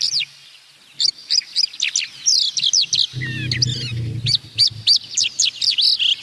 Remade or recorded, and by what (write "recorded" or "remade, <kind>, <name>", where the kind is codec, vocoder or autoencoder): recorded